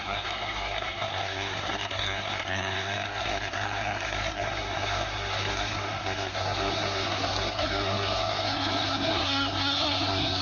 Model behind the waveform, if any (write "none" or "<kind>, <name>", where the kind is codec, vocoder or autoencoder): codec, SNAC